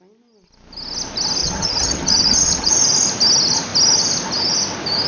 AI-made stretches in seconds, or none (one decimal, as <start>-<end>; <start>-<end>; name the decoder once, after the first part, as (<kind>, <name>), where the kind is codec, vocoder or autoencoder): 1.4-2.7 (vocoder, HiFi-GAN)